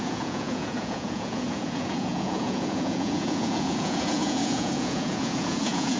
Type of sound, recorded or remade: remade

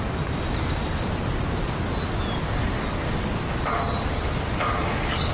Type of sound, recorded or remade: recorded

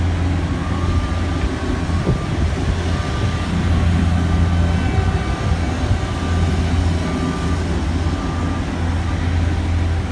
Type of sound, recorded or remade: recorded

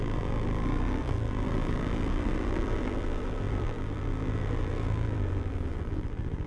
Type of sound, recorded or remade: remade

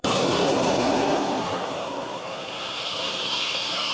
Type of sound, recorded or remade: remade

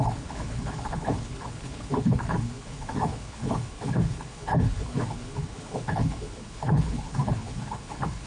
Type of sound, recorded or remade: remade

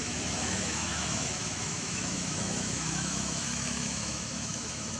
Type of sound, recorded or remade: remade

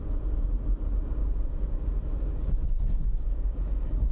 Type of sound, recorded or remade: recorded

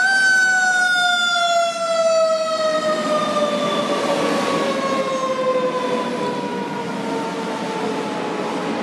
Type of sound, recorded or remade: recorded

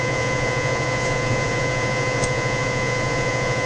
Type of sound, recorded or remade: remade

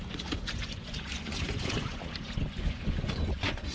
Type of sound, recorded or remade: remade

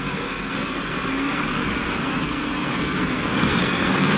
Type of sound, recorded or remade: remade